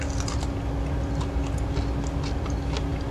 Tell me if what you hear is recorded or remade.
recorded